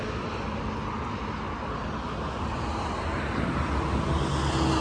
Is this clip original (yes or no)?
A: yes